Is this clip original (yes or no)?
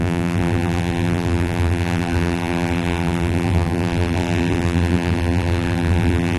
no